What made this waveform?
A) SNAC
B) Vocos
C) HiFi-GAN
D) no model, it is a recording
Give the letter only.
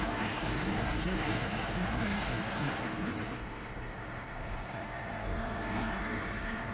A